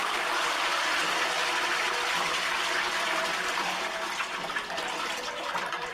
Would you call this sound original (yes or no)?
no